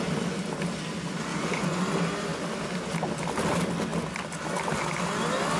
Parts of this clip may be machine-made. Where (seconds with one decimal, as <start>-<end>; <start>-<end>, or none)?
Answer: 1.3-1.8